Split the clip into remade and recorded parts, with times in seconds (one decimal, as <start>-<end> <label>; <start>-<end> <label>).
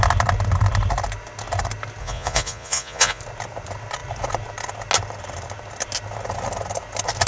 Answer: 0.0-2.0 recorded; 2.0-3.2 remade; 3.2-7.3 recorded